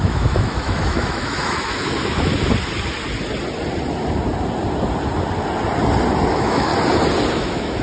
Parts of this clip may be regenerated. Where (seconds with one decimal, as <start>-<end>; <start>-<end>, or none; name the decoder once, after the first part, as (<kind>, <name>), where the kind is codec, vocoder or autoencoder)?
0.0-2.3 (autoencoder, DAC-VAE); 6.3-6.7; 7.3-7.8